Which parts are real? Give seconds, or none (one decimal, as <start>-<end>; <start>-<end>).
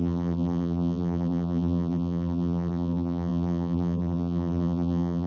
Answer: none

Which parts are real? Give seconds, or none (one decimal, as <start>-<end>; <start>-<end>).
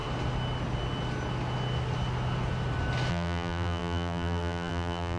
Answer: 0.0-3.1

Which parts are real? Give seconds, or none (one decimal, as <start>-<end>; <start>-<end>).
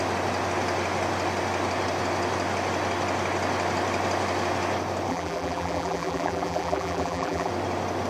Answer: 0.0-5.1; 7.5-8.1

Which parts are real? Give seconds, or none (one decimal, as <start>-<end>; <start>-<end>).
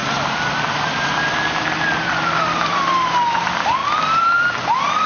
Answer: 3.1-3.8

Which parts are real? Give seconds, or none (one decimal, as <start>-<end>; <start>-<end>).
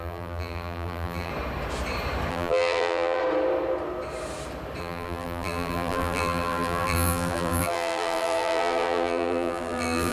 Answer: 1.3-2.3; 3.2-4.8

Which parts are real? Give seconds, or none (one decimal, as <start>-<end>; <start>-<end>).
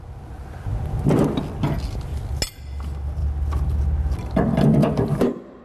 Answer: 0.0-4.8